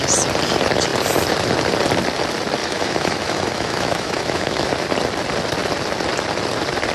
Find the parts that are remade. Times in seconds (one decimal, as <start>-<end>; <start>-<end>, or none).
2.6-4.7

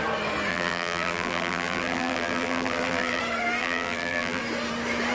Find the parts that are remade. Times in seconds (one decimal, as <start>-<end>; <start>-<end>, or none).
0.5-3.2; 3.6-4.4